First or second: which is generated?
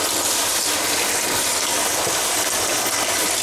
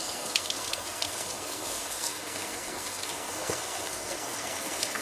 second